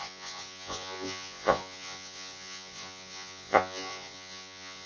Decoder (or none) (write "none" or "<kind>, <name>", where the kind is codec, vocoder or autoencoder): vocoder, Vocos